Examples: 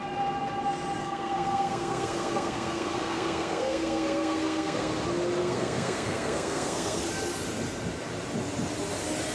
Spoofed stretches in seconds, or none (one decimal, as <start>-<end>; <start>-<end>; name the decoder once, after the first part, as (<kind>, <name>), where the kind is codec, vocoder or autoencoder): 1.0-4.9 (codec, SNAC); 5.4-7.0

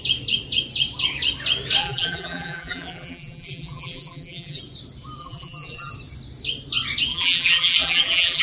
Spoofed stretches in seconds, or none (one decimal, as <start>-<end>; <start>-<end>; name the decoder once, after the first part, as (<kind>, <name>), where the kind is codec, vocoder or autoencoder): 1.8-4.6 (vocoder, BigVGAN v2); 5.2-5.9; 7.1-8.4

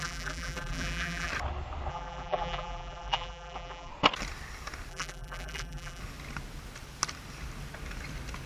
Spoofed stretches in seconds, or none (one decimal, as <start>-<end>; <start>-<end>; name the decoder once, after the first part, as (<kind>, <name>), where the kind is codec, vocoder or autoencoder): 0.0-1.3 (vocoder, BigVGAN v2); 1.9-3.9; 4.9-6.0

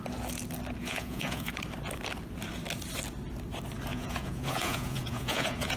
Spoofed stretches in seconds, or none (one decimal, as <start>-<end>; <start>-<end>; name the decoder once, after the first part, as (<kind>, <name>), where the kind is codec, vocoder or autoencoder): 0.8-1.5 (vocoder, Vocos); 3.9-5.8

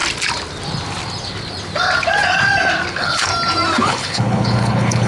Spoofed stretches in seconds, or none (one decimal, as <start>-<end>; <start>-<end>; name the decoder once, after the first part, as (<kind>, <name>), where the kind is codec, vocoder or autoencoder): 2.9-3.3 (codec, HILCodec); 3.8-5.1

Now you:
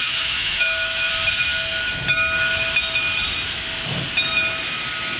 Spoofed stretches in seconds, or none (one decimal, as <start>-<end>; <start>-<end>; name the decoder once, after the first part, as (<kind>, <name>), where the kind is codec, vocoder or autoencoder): 0.0-1.1 (autoencoder, DAC-VAE)

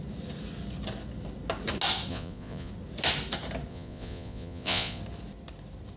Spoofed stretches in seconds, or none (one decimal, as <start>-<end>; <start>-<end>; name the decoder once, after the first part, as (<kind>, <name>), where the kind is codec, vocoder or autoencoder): 2.1-2.7 (vocoder, Vocos); 3.7-5.0

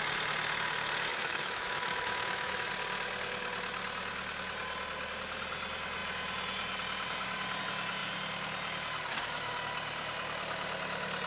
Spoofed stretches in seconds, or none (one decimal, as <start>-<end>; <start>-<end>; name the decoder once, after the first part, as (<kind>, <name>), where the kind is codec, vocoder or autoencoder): 1.1-2.7 (autoencoder, DAC-VAE)